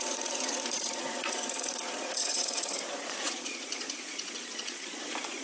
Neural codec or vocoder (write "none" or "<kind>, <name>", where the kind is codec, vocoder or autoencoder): vocoder, Vocos